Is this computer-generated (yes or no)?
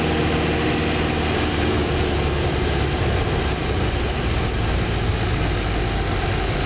no